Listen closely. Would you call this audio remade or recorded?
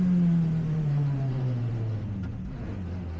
recorded